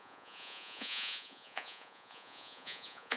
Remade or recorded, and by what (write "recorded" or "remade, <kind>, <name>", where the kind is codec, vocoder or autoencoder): remade, vocoder, Vocos